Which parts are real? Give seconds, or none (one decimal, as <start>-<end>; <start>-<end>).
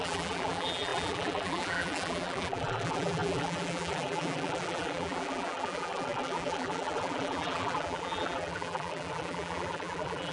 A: none